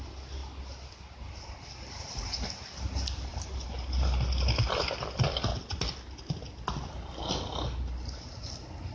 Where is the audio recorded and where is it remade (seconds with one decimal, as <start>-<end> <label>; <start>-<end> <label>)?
0.0-8.9 recorded